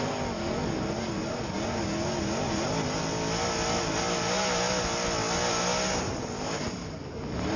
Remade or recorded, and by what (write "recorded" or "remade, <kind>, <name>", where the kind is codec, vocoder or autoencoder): recorded